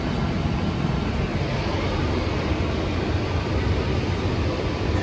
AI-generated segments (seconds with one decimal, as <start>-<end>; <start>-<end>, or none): none